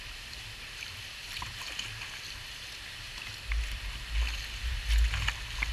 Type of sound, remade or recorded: recorded